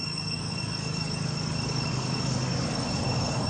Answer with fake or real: fake